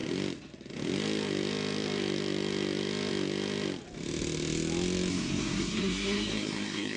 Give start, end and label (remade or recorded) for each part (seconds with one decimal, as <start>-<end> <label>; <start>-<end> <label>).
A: 0.0-5.1 recorded; 5.1-7.0 remade